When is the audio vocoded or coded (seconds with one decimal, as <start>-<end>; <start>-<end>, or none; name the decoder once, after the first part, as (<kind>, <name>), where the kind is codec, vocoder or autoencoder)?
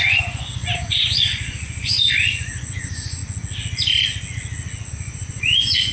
0.0-3.2 (vocoder, Vocos); 4.9-5.9